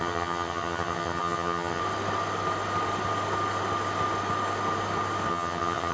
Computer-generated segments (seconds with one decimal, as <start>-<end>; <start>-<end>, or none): 0.0-1.8; 5.3-5.9